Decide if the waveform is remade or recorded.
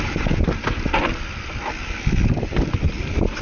recorded